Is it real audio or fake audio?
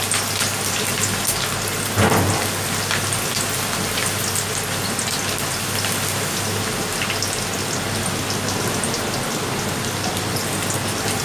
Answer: real